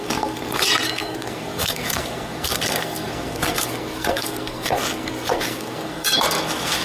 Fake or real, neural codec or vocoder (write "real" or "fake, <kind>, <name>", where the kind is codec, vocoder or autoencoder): fake, codec, SNAC